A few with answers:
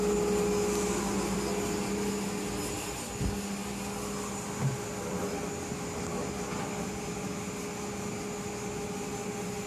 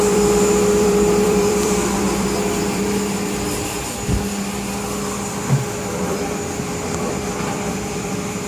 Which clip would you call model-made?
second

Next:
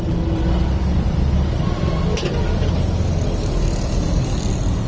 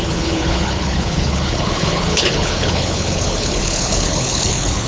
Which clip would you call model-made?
second